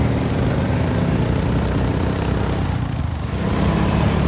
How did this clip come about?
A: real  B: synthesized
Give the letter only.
B